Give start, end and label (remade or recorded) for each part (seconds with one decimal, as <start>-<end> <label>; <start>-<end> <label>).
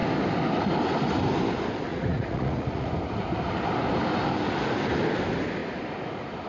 0.0-1.9 recorded; 1.9-2.9 remade; 2.9-6.5 recorded